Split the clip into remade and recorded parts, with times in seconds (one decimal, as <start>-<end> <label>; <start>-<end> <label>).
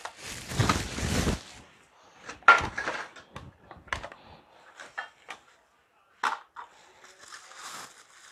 0.0-8.3 recorded